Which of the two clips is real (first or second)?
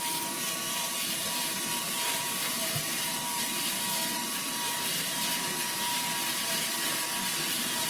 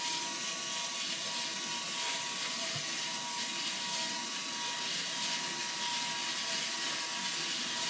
second